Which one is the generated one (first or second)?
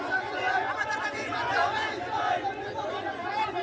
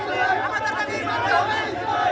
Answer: first